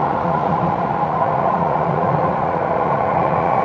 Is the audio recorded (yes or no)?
no